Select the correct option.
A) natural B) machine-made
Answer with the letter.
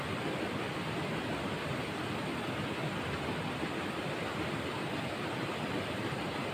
A